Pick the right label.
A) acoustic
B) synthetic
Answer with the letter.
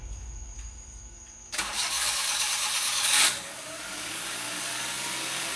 B